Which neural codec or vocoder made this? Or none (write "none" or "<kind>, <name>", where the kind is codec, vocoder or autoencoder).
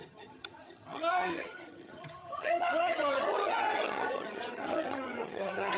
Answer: vocoder, HiFi-GAN